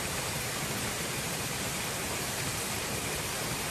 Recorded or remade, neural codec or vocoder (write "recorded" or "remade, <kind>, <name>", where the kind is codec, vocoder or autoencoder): remade, vocoder, BigVGAN v2